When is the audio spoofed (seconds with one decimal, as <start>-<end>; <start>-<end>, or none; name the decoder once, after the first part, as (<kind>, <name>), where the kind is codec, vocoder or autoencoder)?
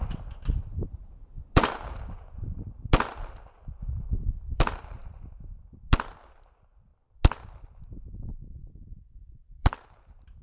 3.8-4.6 (vocoder, BigVGAN v2); 9.2-10.4